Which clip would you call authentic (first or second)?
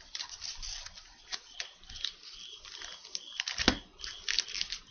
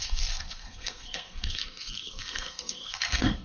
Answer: first